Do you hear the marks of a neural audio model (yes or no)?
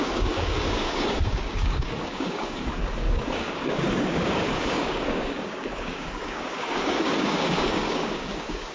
yes